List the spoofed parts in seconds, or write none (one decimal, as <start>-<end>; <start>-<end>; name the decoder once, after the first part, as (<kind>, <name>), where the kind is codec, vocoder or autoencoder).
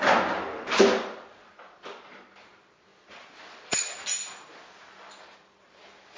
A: none